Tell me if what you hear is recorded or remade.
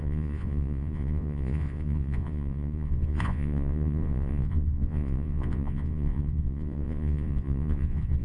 remade